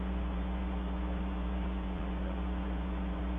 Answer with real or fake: fake